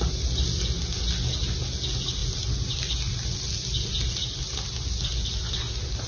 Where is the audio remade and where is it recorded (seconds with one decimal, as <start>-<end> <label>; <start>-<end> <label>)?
0.0-6.1 recorded